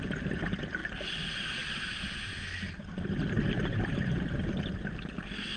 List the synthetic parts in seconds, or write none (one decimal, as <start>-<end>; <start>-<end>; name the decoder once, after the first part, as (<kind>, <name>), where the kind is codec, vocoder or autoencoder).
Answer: none

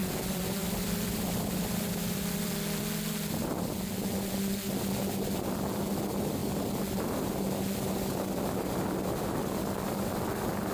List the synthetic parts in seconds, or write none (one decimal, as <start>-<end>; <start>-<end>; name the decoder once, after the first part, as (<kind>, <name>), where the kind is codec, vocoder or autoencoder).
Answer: 0.0-2.5 (vocoder, BigVGAN v2)

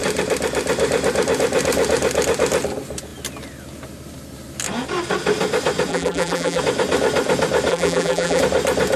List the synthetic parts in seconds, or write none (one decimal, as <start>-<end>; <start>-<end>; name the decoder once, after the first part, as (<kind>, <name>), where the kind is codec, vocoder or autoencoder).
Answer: 5.9-6.6 (vocoder, BigVGAN v2); 7.7-8.4

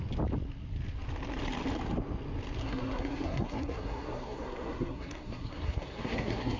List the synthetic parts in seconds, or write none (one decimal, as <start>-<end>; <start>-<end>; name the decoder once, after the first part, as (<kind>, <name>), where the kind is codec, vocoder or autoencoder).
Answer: 2.6-6.6 (codec, SNAC)